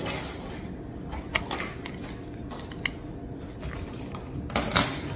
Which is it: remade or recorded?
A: recorded